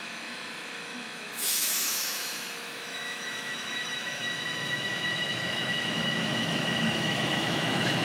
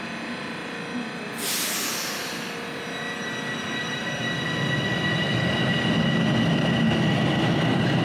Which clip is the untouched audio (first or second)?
second